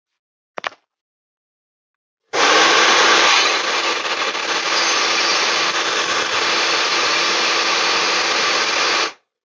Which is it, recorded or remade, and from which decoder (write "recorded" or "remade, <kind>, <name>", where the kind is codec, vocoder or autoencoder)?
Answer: recorded